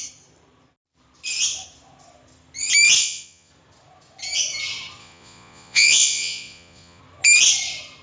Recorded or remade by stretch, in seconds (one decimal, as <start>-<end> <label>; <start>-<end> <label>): 0.0-3.0 recorded; 3.0-3.5 remade; 3.5-5.0 recorded; 5.0-7.0 remade; 7.0-8.0 recorded